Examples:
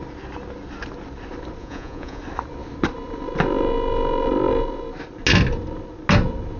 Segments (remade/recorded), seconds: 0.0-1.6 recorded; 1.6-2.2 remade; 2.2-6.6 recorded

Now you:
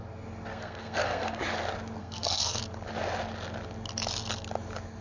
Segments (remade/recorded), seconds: 0.0-0.5 recorded; 0.5-1.4 remade; 1.4-2.0 recorded; 2.0-2.6 remade; 2.6-5.0 recorded

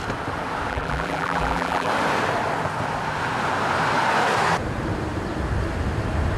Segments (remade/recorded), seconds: 0.0-0.7 recorded; 0.7-1.9 remade; 1.9-6.4 recorded

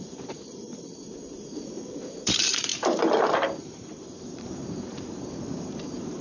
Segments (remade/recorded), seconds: 0.0-6.2 remade